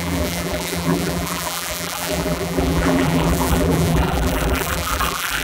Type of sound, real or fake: fake